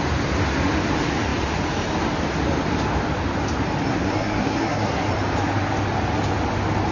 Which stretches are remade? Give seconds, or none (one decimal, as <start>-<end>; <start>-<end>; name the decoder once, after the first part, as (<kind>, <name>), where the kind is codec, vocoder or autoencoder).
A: 3.9-5.1 (codec, SNAC)